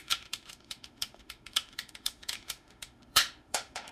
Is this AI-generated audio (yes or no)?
yes